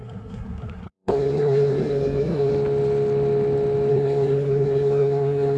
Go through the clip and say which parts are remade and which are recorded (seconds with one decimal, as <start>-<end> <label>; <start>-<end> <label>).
0.0-2.5 remade; 2.5-3.9 recorded; 3.9-5.6 remade